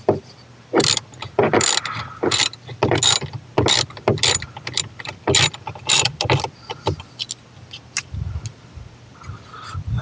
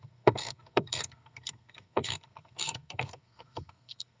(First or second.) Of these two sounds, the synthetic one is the second